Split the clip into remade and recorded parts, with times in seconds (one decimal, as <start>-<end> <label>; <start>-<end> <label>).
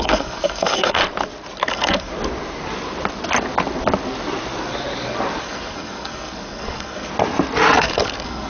0.0-1.0 remade; 1.0-1.7 recorded; 1.7-2.1 remade; 2.1-5.4 recorded; 5.4-7.1 remade; 7.1-7.8 recorded; 7.8-8.5 remade